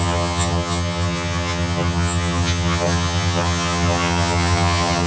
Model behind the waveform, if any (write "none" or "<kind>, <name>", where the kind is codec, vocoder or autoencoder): vocoder, HiFi-GAN